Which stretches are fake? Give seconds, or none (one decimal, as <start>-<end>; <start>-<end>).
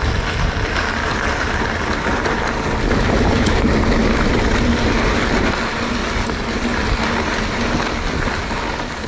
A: none